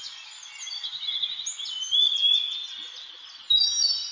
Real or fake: real